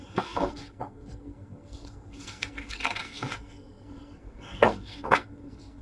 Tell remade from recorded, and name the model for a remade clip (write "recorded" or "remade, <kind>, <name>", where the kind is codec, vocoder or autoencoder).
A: remade, codec, SNAC